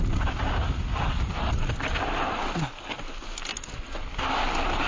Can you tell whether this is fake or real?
real